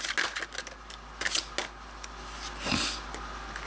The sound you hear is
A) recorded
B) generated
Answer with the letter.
A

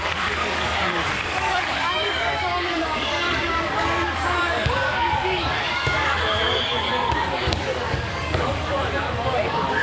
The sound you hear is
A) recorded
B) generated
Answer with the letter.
B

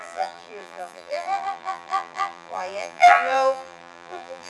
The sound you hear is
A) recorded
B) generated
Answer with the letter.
B